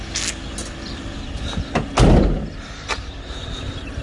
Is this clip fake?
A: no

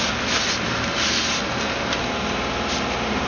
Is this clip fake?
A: no